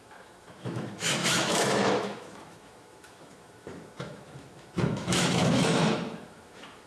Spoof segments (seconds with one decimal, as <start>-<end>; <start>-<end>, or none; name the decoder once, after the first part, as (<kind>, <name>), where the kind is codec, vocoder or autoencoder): 0.0-6.9 (autoencoder, DAC-VAE)

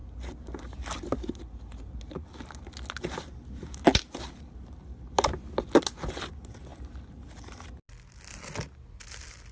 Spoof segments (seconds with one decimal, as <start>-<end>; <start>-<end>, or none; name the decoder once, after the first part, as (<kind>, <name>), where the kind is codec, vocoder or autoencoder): none